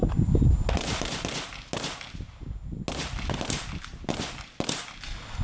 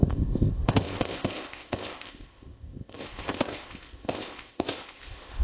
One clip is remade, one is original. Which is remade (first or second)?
second